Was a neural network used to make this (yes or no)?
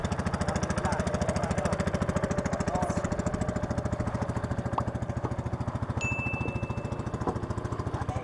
no